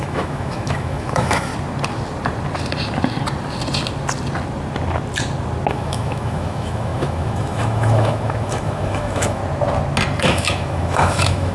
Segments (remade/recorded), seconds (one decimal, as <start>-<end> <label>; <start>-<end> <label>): 0.0-1.5 remade; 1.5-5.7 recorded; 5.7-9.4 remade; 9.4-10.2 recorded; 10.2-11.5 remade

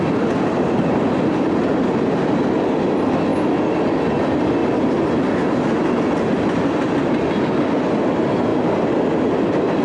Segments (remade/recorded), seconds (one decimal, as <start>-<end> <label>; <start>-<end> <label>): 0.0-9.8 recorded

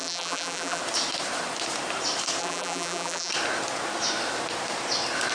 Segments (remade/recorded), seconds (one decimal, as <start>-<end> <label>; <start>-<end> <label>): 0.0-0.8 remade; 0.8-2.4 recorded; 2.4-3.3 remade; 3.3-5.3 recorded